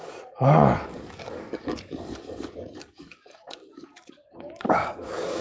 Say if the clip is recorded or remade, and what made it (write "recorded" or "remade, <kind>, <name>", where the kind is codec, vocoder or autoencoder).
remade, codec, DAC